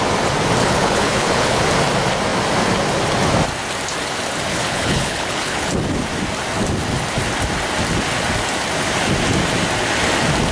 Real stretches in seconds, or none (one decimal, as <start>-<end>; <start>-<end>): 0.0-0.6; 1.6-4.5; 5.7-10.5